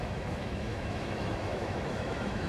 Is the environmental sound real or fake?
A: fake